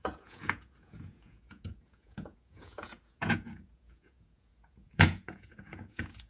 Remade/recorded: remade